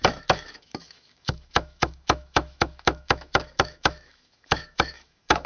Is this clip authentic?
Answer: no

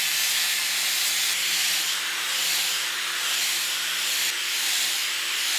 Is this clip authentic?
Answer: yes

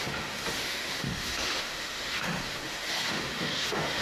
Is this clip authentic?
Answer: no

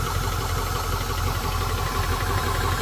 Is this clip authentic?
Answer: yes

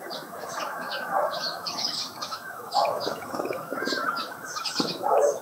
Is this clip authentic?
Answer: no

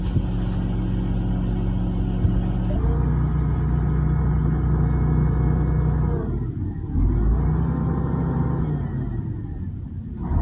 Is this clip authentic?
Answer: yes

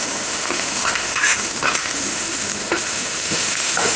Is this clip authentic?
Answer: no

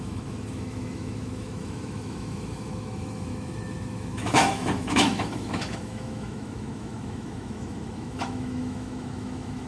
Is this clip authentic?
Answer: no